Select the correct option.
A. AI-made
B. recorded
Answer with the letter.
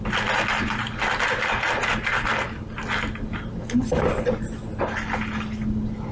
B